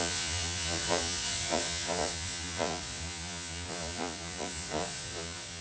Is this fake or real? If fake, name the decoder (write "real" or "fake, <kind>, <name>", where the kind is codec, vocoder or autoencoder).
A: fake, vocoder, Vocos